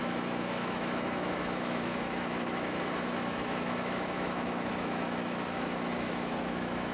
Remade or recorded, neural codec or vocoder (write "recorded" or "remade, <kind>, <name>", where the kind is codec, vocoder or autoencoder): remade, autoencoder, DAC-VAE